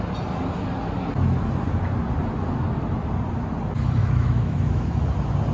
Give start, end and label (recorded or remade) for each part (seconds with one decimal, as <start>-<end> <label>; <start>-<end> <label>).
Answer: 0.0-4.0 recorded; 4.0-5.0 remade; 5.0-5.5 recorded